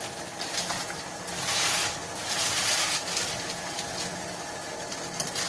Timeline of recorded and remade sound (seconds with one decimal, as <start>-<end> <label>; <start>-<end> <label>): 0.0-5.5 recorded